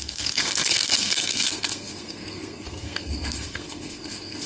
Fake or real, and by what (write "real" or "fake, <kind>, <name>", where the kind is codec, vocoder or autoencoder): fake, codec, SNAC